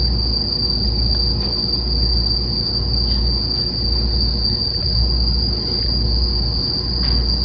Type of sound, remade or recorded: recorded